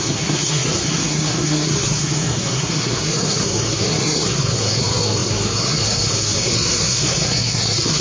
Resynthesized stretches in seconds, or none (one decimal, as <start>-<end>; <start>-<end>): 0.0-8.0